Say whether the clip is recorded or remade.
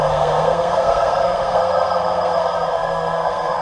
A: remade